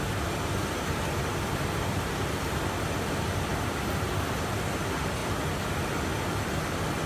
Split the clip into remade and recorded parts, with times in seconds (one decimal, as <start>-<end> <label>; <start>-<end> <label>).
0.0-7.1 recorded

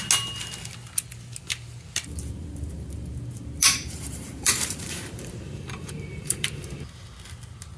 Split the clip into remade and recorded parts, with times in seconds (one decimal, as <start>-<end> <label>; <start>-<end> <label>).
0.0-2.4 recorded; 2.4-3.1 remade; 3.1-3.6 recorded; 3.6-6.5 remade; 6.5-7.8 recorded

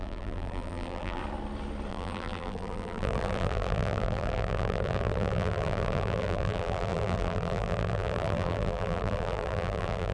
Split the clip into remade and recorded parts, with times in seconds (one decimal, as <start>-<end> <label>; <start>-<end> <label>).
0.0-1.2 remade; 1.2-1.9 recorded; 1.9-10.1 remade

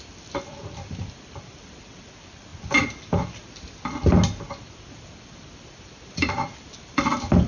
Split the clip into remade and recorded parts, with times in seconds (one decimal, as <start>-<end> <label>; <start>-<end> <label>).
0.0-2.5 remade; 2.5-4.5 recorded; 4.5-7.5 remade

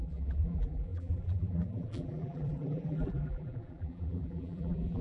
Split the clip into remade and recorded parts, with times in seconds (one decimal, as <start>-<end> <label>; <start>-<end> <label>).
0.0-5.0 remade

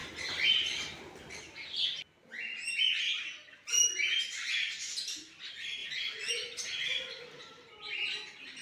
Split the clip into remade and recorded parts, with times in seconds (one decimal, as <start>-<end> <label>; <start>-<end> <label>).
0.0-1.4 remade; 1.4-5.8 recorded; 5.8-6.3 remade; 6.3-8.6 recorded

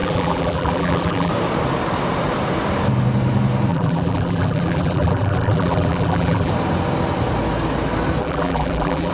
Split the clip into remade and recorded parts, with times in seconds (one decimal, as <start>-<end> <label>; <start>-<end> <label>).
0.0-1.3 remade; 1.3-3.7 recorded; 3.7-6.5 remade; 6.5-8.2 recorded; 8.2-9.1 remade